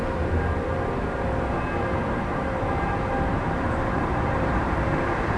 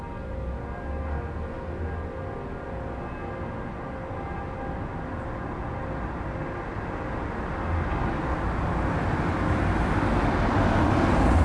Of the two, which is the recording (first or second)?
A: second